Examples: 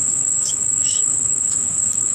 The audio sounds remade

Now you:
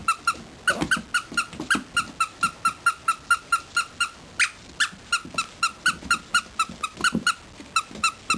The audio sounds recorded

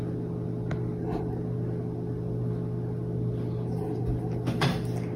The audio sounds recorded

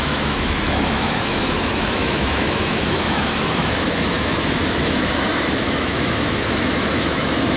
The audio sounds remade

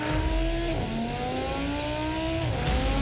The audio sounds recorded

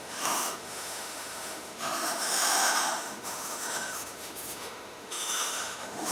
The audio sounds remade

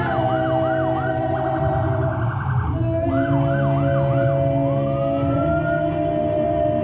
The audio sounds recorded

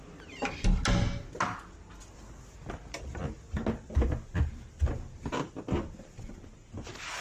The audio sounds recorded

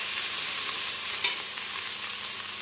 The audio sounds recorded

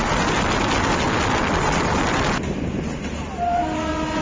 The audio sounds recorded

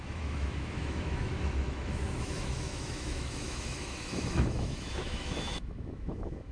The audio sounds remade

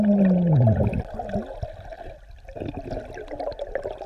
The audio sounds recorded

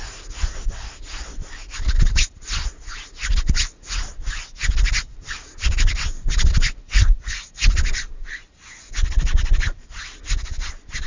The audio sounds recorded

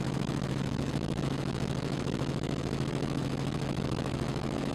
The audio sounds remade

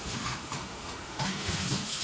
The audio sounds remade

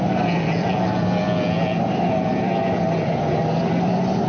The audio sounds recorded